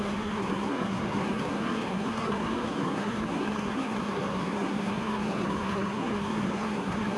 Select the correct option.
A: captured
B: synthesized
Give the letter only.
B